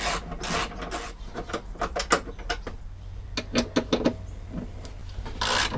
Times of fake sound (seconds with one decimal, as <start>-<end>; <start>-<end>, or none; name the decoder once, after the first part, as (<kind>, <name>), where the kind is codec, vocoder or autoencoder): none